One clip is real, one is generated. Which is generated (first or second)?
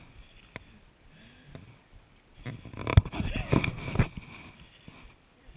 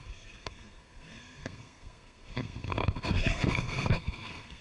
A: second